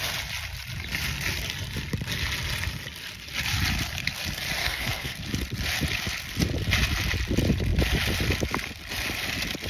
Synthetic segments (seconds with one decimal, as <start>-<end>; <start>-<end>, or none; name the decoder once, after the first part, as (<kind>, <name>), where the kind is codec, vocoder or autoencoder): 4.6-5.2 (codec, SNAC)